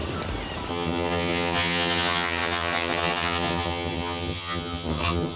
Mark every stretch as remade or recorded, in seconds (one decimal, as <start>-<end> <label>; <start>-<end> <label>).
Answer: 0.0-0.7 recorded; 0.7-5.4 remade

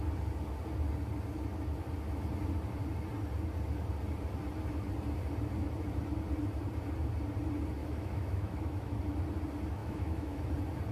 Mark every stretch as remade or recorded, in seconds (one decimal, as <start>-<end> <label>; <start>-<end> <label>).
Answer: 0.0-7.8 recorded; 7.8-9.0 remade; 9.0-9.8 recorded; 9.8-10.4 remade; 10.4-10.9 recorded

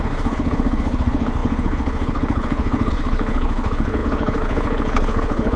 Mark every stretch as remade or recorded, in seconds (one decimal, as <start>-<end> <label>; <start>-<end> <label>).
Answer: 0.0-5.6 remade

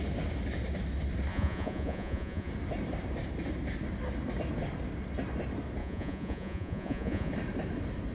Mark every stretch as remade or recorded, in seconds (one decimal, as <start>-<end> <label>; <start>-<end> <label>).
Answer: 0.0-1.3 recorded; 1.3-2.5 remade; 2.5-5.8 recorded; 5.8-7.3 remade; 7.3-8.1 recorded

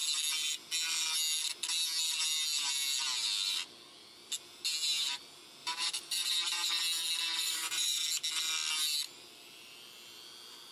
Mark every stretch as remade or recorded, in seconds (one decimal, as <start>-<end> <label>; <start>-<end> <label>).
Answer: 0.0-5.6 recorded; 5.6-6.7 remade; 6.7-7.4 recorded; 7.4-8.0 remade; 8.0-10.7 recorded